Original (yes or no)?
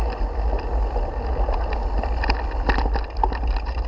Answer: yes